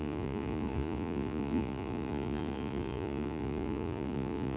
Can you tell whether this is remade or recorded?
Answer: remade